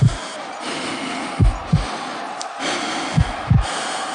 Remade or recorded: recorded